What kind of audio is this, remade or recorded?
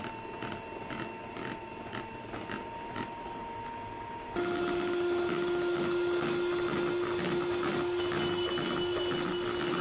recorded